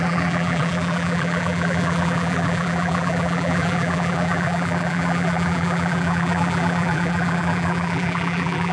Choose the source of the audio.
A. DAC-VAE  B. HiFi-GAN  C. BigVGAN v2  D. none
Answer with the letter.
C